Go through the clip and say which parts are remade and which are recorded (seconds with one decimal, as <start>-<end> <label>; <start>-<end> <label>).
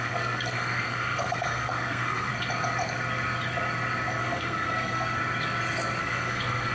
0.0-2.3 remade; 2.3-4.2 recorded; 4.2-5.2 remade; 5.2-6.0 recorded; 6.0-6.7 remade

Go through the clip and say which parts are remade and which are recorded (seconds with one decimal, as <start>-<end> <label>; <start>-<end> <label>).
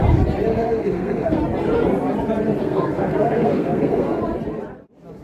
0.0-0.5 recorded; 0.5-1.4 remade; 1.4-2.6 recorded; 2.6-4.2 remade; 4.2-5.2 recorded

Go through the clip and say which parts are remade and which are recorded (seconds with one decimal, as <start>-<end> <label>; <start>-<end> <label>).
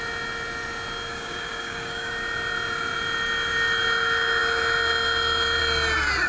0.0-1.1 recorded; 1.1-2.1 remade; 2.1-6.3 recorded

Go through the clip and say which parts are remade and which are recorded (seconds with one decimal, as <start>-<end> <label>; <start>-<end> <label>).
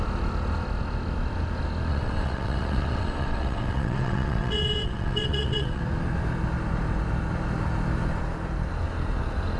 0.0-1.9 recorded; 1.9-5.8 remade; 5.8-9.6 recorded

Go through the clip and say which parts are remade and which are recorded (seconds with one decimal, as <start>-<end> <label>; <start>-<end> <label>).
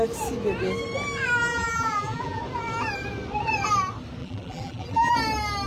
0.0-1.5 recorded; 1.5-2.4 remade; 2.4-4.2 recorded; 4.2-5.1 remade; 5.1-5.7 recorded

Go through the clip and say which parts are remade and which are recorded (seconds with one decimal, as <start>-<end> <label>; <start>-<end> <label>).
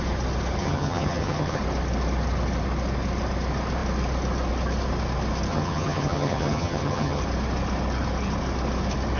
0.0-0.6 recorded; 0.6-1.6 remade; 1.6-5.5 recorded; 5.5-7.2 remade; 7.2-9.2 recorded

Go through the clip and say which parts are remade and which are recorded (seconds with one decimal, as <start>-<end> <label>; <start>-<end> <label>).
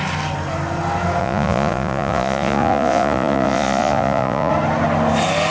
0.0-1.2 recorded; 1.2-4.5 remade; 4.5-5.5 recorded